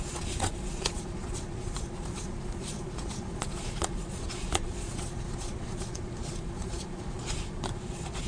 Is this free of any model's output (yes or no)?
no